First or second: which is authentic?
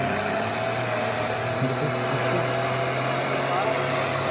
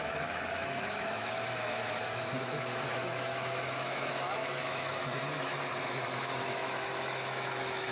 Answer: first